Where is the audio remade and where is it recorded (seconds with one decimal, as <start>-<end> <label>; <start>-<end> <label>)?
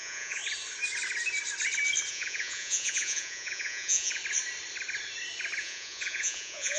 0.0-0.4 remade; 0.4-2.1 recorded; 2.1-4.2 remade; 4.2-5.6 recorded; 5.6-6.8 remade